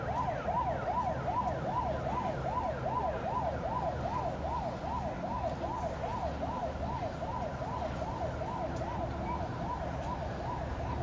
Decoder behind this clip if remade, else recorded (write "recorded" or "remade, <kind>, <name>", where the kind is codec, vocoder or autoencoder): recorded